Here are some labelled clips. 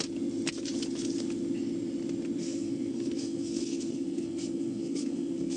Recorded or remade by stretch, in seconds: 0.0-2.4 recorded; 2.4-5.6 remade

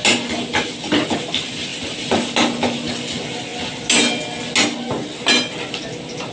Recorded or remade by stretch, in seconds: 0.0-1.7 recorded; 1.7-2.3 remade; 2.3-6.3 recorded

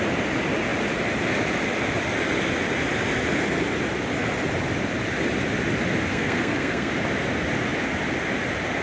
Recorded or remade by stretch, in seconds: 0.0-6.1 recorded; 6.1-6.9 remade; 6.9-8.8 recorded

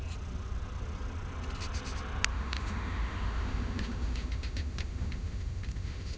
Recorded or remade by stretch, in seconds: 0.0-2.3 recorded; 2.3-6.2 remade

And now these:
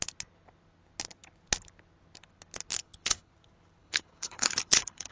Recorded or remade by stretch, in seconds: 0.0-2.7 recorded; 2.7-3.3 remade; 3.3-3.8 recorded; 3.8-5.1 remade

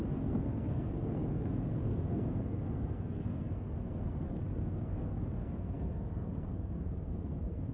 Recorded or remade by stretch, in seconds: 0.0-7.7 remade

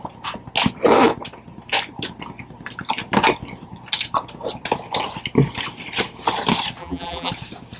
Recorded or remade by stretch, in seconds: 0.0-6.8 recorded; 6.8-7.3 remade; 7.3-7.8 recorded

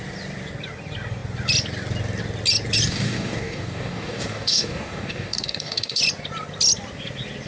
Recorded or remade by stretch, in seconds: 0.0-2.9 recorded; 2.9-6.0 remade; 6.0-7.5 recorded